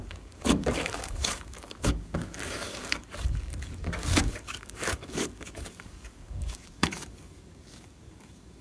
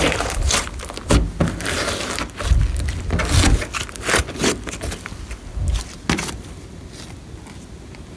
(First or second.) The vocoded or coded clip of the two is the first